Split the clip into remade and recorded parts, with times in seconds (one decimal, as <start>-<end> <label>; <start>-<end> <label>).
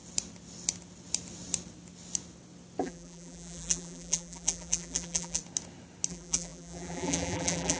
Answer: 0.0-2.8 recorded; 2.8-5.4 remade; 5.4-6.1 recorded; 6.1-7.8 remade